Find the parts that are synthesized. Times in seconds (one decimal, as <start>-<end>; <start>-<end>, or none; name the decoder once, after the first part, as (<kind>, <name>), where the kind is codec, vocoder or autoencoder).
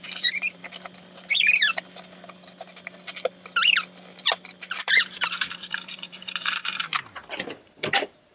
0.0-0.6 (vocoder, BigVGAN v2); 4.8-6.9; 7.7-8.3